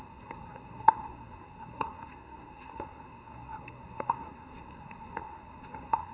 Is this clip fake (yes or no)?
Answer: yes